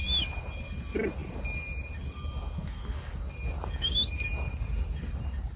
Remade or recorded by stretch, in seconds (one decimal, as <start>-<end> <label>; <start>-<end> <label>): 0.0-5.6 recorded